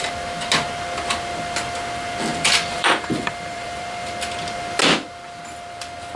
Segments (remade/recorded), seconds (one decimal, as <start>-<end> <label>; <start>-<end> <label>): 0.0-2.3 recorded; 2.3-4.1 remade; 4.1-6.2 recorded